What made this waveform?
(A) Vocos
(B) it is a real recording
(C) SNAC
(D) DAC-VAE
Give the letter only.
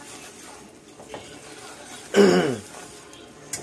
B